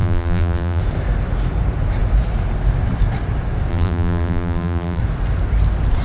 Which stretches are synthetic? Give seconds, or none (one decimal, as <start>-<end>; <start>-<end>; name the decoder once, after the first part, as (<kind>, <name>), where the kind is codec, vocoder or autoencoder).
0.0-0.8 (vocoder, BigVGAN v2); 3.7-5.0